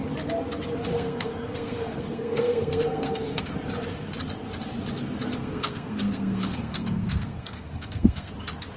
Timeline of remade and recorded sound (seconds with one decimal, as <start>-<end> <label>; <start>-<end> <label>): 0.0-0.9 recorded; 0.9-3.4 remade; 3.4-5.4 recorded; 5.4-8.3 remade; 8.3-8.8 recorded